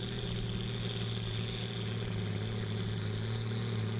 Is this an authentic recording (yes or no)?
yes